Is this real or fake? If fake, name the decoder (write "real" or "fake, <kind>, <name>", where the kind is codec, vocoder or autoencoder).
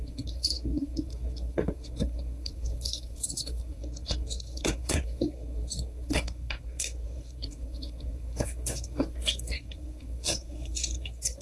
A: fake, codec, SNAC